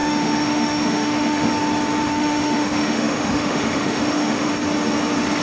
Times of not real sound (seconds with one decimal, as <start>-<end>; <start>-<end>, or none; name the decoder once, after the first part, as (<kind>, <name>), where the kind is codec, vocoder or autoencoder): 0.0-1.5 (autoencoder, DAC-VAE); 2.0-4.5